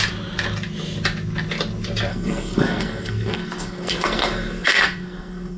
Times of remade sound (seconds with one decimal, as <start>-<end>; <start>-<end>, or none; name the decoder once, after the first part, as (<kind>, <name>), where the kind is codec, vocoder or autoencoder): 2.1-5.6 (codec, SNAC)